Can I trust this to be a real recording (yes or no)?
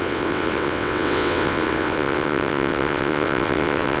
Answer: no